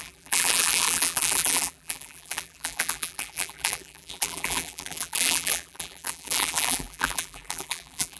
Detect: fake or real fake